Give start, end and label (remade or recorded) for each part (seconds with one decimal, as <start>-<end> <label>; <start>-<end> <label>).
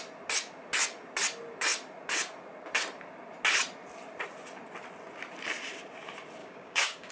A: 0.0-6.4 recorded; 6.4-7.1 remade